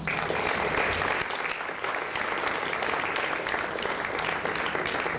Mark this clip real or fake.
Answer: real